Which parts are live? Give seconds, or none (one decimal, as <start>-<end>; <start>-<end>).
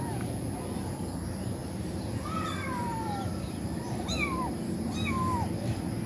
0.0-1.6; 4.6-6.1